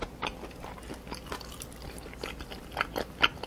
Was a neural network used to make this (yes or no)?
no